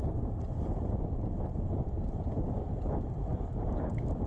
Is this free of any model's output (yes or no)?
no